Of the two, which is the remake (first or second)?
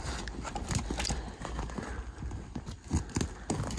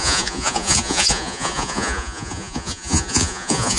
second